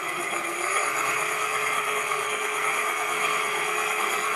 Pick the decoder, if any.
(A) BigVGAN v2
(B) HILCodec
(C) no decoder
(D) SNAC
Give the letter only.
D